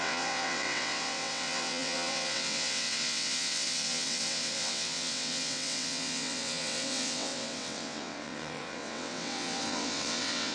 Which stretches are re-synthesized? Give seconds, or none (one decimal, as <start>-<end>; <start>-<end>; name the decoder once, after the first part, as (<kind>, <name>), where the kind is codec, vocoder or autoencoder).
0.0-10.5 (vocoder, WaveNeXt)